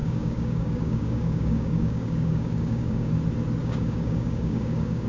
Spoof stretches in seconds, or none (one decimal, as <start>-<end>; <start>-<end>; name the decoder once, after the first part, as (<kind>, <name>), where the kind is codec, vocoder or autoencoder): 0.0-3.1 (codec, DAC); 3.6-5.1